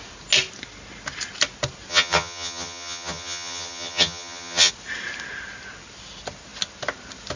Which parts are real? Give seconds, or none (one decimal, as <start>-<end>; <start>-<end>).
0.0-1.9; 4.7-7.4